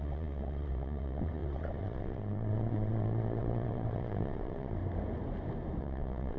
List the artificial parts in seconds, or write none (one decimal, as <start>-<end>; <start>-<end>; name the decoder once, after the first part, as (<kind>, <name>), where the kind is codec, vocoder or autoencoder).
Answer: 0.0-4.8 (vocoder, WaveNeXt); 5.8-6.4